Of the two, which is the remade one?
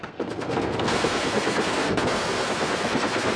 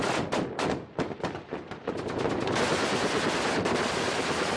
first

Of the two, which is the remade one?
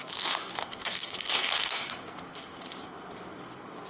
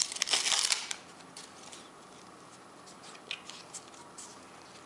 first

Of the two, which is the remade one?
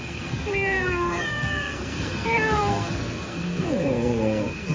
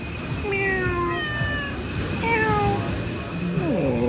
first